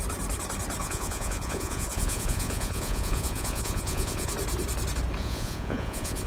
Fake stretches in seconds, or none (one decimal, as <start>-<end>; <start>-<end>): 0.8-4.3; 5.2-6.3